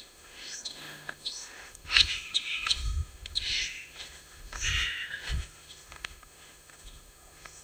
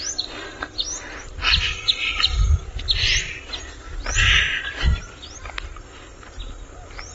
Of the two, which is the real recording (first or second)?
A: second